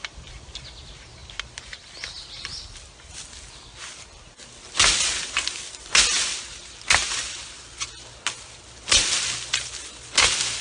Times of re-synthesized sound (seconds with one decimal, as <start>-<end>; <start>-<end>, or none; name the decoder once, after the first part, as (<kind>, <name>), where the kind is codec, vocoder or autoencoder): none